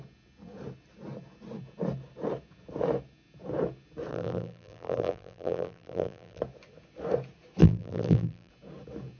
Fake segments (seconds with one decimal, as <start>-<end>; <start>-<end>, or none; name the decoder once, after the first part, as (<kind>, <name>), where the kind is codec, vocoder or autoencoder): 4.1-6.4 (vocoder, BigVGAN v2); 7.6-8.5